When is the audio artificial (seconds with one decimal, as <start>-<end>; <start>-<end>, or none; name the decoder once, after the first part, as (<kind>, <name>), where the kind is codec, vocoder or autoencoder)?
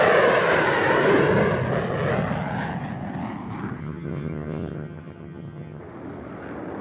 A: 3.8-5.8 (vocoder, HiFi-GAN)